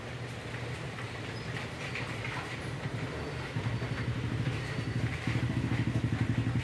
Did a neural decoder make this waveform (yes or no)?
no